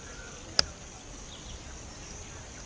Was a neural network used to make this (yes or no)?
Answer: no